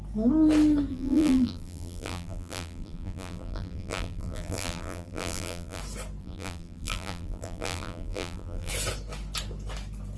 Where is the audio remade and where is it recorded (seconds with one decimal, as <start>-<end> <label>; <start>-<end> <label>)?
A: 0.0-0.9 recorded; 0.9-5.8 remade; 5.8-6.2 recorded; 6.2-8.7 remade; 8.7-10.2 recorded